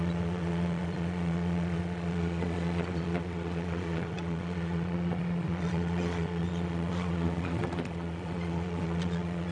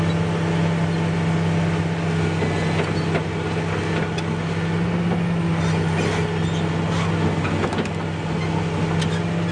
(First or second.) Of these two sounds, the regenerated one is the first